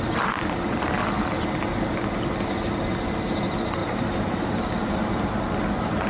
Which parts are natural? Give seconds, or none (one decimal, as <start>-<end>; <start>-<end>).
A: 0.0-3.8; 4.5-6.1